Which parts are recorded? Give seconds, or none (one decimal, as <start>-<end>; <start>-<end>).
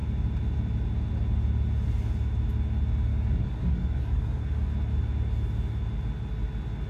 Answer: 0.0-3.1; 4.7-6.9